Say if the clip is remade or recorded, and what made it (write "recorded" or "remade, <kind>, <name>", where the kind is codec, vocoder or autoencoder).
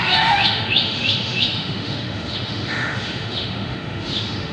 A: remade, autoencoder, DAC-VAE